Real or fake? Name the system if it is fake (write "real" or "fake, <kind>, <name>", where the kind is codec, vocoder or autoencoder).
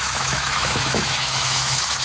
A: fake, autoencoder, DAC-VAE